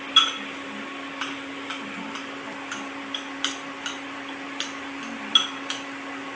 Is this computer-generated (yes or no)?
yes